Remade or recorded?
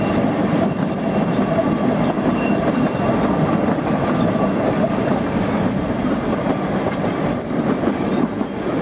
recorded